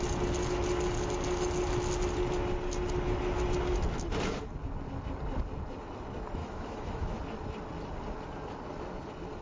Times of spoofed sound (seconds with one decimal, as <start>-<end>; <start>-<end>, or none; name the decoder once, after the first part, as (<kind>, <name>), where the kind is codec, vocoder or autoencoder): 6.4-7.2 (autoencoder, DAC-VAE)